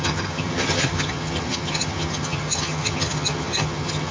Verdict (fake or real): fake